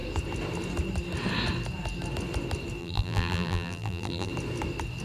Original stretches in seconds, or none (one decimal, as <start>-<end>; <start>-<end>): 0.0-2.8; 4.3-5.0